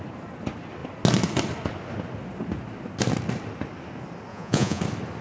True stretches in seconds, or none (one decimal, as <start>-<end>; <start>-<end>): 0.0-4.3; 4.8-5.2